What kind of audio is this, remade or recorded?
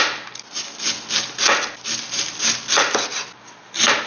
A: recorded